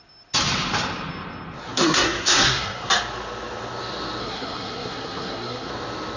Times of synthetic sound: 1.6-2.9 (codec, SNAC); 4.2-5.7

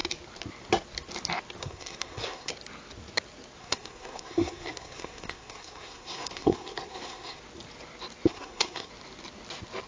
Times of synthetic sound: 1.6-2.5 (codec, SNAC); 3.6-7.4; 8.3-8.9

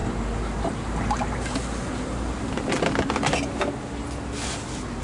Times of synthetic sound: none

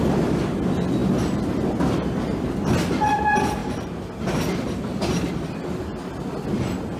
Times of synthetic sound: 3.6-4.1 (vocoder, BigVGAN v2)

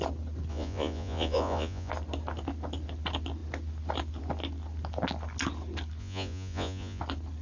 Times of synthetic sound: 0.5-1.9 (vocoder, Vocos); 6.0-7.0

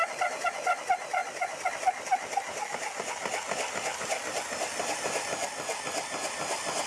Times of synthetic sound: none